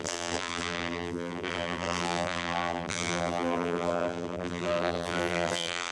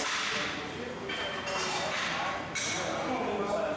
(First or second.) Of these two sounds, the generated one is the first